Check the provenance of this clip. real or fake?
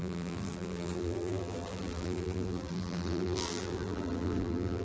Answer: fake